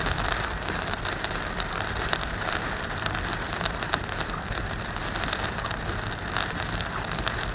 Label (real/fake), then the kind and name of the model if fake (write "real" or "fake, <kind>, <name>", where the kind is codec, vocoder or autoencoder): fake, vocoder, BigVGAN v2